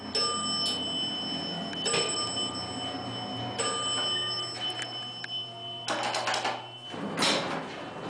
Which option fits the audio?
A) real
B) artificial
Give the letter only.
A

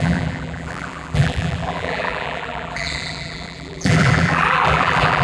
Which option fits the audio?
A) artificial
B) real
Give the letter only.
A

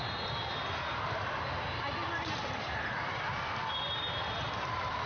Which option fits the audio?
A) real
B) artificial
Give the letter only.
B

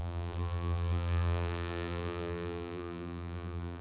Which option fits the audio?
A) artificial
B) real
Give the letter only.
A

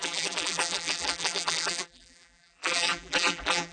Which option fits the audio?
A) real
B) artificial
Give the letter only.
B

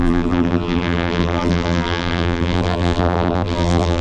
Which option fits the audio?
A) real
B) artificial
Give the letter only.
B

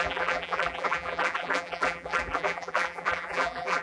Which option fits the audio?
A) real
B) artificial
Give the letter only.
B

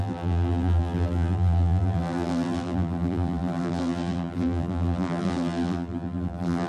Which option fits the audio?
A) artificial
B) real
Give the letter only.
A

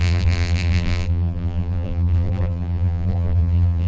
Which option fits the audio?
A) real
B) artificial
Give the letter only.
B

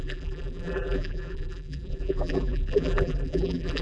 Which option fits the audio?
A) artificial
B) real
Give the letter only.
A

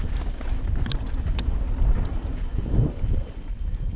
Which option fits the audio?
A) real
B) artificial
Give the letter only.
A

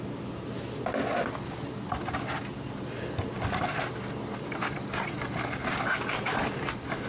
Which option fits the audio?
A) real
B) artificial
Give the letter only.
A